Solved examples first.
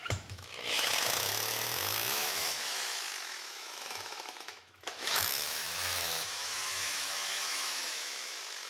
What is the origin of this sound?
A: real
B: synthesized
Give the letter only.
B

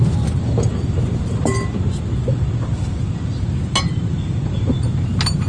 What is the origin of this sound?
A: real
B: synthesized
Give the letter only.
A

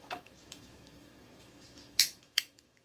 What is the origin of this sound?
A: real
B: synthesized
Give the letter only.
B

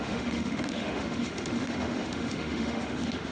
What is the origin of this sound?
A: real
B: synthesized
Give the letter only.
B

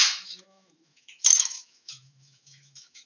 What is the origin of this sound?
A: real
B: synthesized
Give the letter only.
B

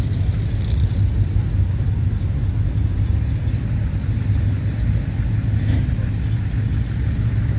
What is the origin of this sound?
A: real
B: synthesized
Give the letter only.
A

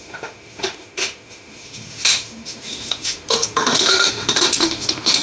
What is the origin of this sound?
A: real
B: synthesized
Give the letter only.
B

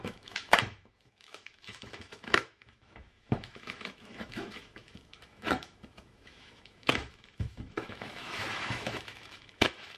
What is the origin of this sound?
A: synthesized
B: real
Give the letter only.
A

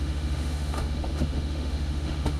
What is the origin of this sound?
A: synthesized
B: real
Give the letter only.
A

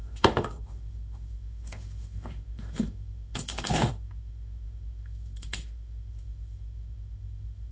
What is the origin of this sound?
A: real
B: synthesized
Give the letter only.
B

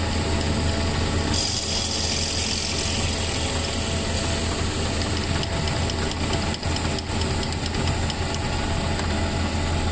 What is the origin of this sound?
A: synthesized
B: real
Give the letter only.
B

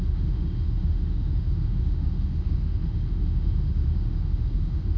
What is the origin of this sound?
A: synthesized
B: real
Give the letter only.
A